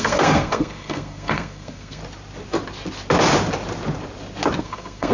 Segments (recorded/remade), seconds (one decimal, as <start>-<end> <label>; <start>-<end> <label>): 0.0-2.0 remade; 2.0-4.6 recorded; 4.6-5.1 remade